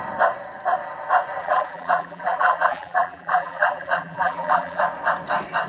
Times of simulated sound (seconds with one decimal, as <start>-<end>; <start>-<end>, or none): 1.4-4.8